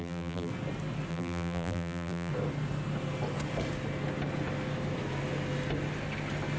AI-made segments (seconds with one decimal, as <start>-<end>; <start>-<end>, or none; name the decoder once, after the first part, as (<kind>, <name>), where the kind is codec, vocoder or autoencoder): 0.0-0.5 (vocoder, BigVGAN v2); 1.1-2.3